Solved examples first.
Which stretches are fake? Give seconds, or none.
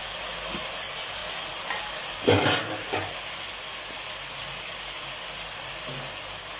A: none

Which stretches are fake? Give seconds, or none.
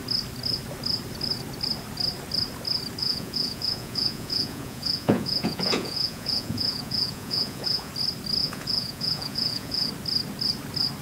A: 3.0-7.9 (vocoder, Vocos); 8.4-9.9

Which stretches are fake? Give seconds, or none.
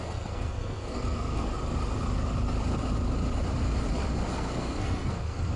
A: 0.0-1.5 (codec, SNAC); 4.3-5.6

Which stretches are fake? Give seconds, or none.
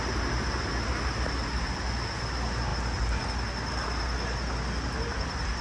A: none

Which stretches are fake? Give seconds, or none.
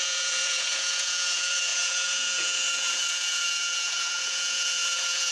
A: 0.0-5.3 (vocoder, Vocos)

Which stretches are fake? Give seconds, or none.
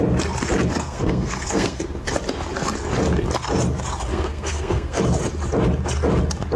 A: 0.7-1.8 (codec, SNAC); 4.1-5.0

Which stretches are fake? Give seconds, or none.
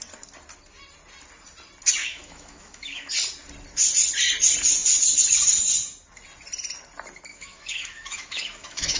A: 2.0-3.1 (autoencoder, DAC-VAE); 7.3-9.0